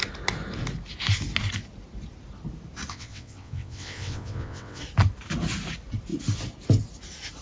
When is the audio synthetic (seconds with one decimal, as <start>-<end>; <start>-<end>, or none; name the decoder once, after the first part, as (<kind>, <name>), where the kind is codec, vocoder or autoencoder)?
2.9-4.8 (vocoder, WaveNeXt)